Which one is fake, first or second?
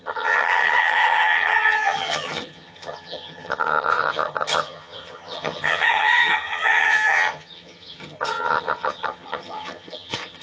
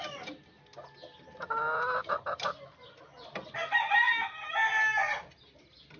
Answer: first